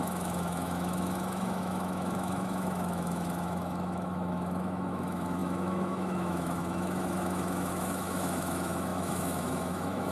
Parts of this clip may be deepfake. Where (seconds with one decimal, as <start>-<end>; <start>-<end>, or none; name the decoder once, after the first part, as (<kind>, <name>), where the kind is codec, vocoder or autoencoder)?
0.0-10.1 (autoencoder, DAC-VAE)